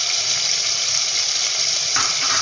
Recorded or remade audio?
recorded